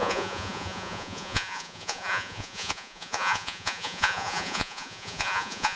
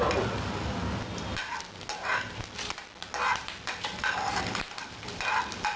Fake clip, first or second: first